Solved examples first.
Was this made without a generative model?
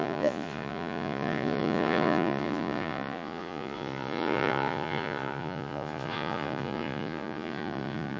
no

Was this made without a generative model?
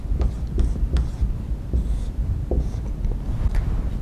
yes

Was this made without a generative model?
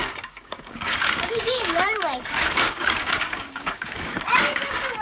no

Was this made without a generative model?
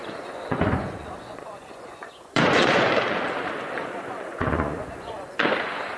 no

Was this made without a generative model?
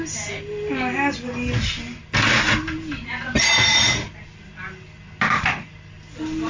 yes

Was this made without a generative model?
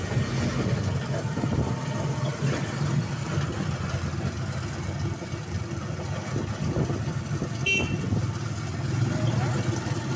yes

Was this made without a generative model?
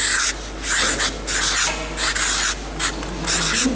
yes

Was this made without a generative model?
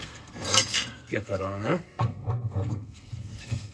no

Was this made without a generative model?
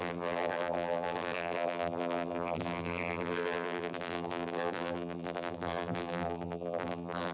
no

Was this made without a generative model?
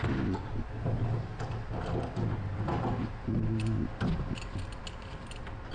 yes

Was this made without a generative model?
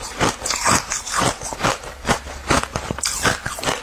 yes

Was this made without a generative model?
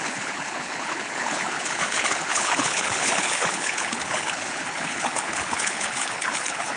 no